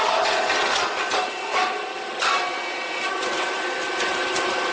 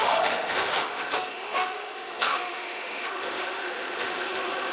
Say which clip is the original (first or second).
first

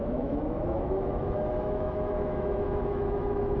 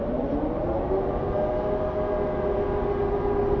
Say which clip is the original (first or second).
second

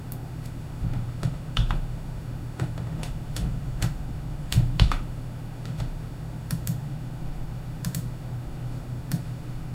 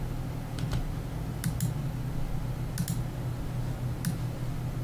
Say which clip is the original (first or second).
second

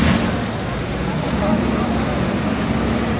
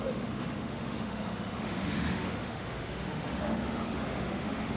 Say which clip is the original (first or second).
first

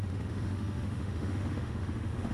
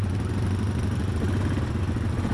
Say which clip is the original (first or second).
second